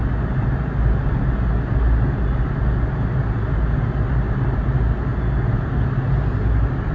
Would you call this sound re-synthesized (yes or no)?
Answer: no